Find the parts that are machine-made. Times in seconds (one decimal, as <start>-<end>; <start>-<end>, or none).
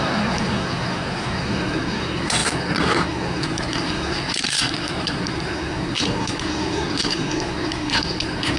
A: 0.0-8.6